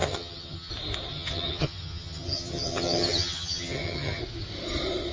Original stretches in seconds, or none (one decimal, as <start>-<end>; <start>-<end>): 0.7-1.1; 4.2-5.1